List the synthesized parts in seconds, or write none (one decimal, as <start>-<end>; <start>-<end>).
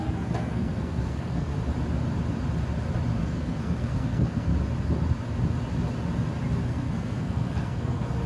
0.0-1.5; 3.2-4.5; 6.6-8.3